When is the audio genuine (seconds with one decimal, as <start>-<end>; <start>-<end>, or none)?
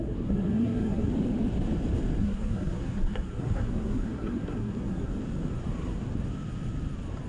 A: 1.1-2.2; 5.1-7.3